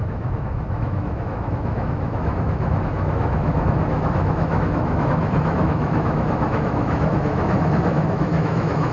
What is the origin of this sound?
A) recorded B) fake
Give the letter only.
B